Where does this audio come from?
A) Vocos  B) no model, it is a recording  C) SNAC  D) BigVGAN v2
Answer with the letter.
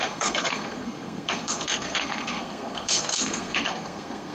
C